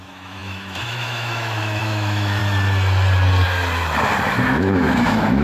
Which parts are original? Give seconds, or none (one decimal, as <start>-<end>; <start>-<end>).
2.4-4.3